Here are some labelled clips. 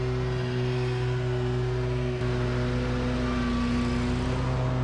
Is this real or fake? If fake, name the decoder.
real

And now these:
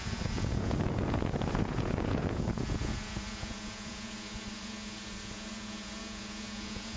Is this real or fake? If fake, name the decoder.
fake, vocoder, Vocos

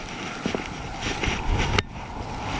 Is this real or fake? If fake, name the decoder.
real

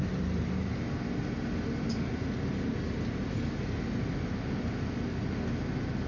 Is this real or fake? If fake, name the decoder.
real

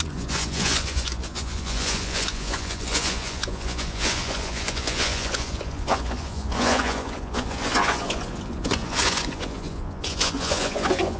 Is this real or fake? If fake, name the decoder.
fake, vocoder, Vocos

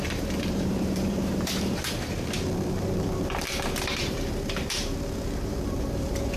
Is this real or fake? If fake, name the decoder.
fake, vocoder, BigVGAN v2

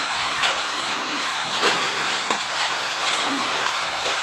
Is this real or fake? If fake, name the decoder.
fake, codec, SNAC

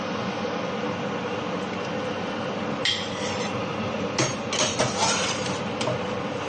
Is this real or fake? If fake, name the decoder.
real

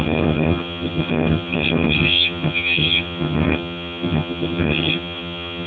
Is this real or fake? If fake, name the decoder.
fake, vocoder, HiFi-GAN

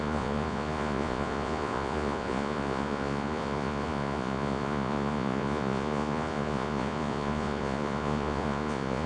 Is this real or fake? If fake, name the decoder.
fake, vocoder, Vocos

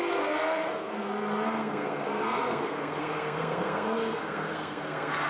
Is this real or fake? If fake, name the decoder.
fake, codec, SNAC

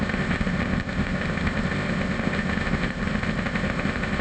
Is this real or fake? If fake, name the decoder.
fake, codec, ZipCodec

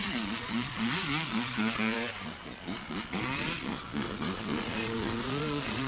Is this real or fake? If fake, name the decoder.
fake, vocoder, Vocos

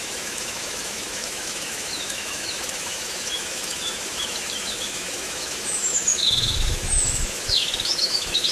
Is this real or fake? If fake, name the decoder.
fake, autoencoder, DAC-VAE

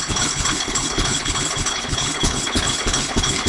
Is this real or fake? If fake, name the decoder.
fake, codec, HILCodec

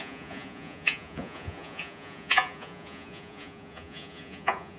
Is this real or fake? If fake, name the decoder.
fake, vocoder, Vocos